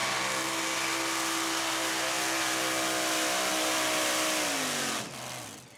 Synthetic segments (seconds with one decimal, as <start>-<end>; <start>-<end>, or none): none

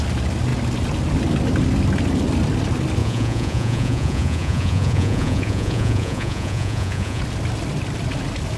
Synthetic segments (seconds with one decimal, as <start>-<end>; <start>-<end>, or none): 3.0-7.2

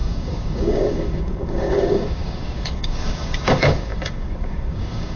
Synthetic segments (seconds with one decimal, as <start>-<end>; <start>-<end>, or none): 0.0-5.2

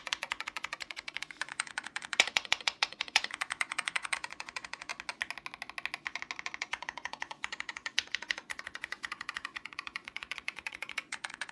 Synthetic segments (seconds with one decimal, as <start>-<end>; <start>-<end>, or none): 0.0-4.9; 6.6-11.5

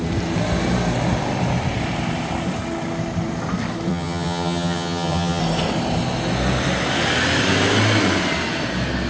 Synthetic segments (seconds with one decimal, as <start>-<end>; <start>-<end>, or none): 3.9-5.4

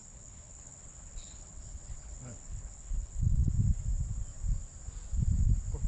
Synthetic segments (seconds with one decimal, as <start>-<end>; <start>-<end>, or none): 0.0-3.5

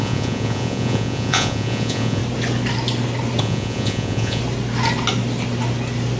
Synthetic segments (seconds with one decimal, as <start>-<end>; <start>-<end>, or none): 0.0-2.2; 3.4-4.4